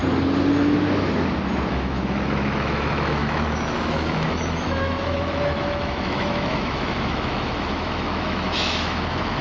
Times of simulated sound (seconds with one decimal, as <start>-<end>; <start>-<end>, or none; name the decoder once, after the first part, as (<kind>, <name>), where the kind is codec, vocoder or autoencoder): 1.7-9.4 (autoencoder, DAC-VAE)